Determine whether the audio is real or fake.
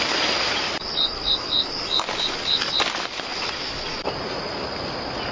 real